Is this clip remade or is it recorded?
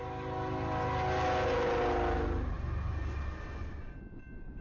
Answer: recorded